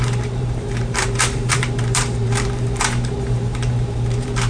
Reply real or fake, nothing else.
fake